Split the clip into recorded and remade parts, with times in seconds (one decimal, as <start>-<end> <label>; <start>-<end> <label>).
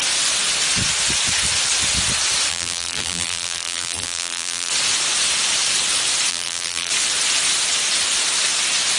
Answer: 0.0-2.5 recorded; 2.5-4.7 remade; 4.7-6.3 recorded; 6.3-6.9 remade; 6.9-9.0 recorded